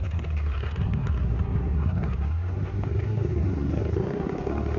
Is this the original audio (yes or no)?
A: no